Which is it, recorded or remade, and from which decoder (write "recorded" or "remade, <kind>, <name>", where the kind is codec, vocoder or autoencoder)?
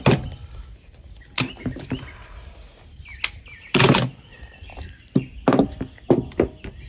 recorded